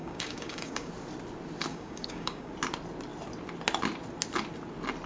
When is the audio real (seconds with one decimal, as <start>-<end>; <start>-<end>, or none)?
0.9-1.7; 2.5-5.1